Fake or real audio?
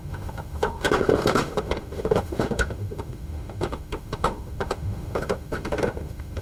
fake